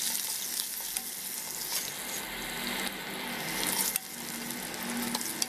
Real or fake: real